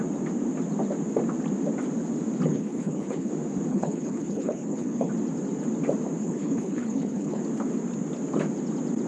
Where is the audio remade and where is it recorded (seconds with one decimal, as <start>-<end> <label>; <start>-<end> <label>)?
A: 0.0-2.5 recorded; 2.5-3.3 remade; 3.3-3.7 recorded; 3.7-5.1 remade; 5.1-6.2 recorded; 6.2-7.4 remade; 7.4-9.1 recorded